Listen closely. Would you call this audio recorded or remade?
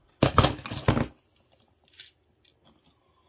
recorded